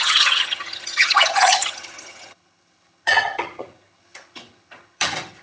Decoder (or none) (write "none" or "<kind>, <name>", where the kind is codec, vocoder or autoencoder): vocoder, HiFi-GAN